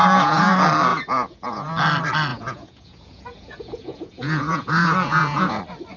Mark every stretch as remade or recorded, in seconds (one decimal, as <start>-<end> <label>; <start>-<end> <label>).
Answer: 0.0-0.5 remade; 0.5-0.9 recorded; 0.9-1.7 remade; 1.7-2.3 recorded; 2.3-5.6 remade; 5.6-6.0 recorded

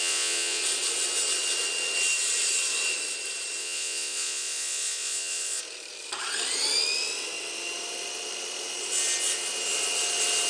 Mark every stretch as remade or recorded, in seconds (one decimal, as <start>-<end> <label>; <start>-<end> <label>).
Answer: 0.0-0.6 remade; 0.6-3.6 recorded; 3.6-5.6 remade; 5.6-10.5 recorded

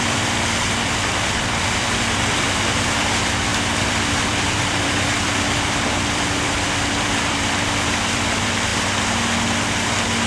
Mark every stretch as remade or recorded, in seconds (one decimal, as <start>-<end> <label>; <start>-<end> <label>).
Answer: 0.0-8.7 remade; 8.7-10.3 recorded

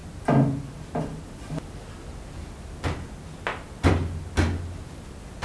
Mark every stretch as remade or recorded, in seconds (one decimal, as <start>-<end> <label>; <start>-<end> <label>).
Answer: 0.0-5.4 recorded

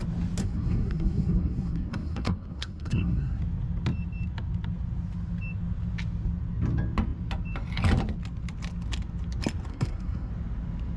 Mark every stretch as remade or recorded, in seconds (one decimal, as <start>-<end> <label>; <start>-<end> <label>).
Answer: 0.0-0.4 recorded; 0.4-3.4 remade; 3.4-9.7 recorded; 9.7-10.3 remade; 10.3-11.0 recorded

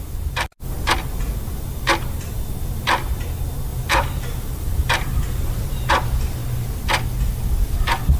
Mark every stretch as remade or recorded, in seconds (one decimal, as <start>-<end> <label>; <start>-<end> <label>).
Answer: 0.0-3.7 recorded; 3.7-5.9 remade; 5.9-8.2 recorded

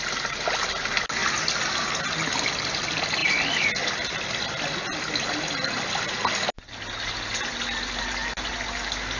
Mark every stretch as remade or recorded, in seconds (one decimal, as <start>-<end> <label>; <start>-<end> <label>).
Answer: 0.0-9.2 recorded

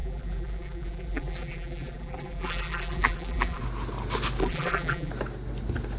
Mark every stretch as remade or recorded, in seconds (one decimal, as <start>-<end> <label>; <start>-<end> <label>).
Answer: 0.0-3.6 remade; 3.6-4.4 recorded; 4.4-5.1 remade; 5.1-6.0 recorded